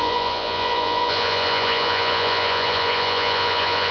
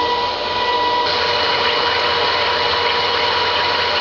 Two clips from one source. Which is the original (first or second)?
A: second